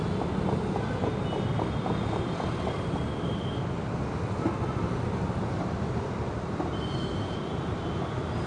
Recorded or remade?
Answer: recorded